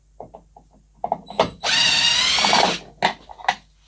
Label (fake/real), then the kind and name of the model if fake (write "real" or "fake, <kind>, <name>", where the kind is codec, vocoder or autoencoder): real